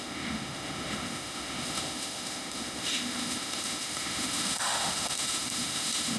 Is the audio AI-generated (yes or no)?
yes